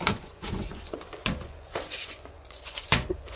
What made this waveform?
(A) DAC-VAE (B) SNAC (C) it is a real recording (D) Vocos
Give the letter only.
D